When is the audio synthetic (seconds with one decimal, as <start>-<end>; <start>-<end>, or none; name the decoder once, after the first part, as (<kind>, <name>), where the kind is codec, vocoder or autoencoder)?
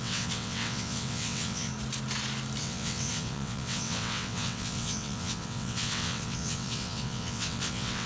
0.0-1.7 (vocoder, WaveNeXt); 2.6-8.1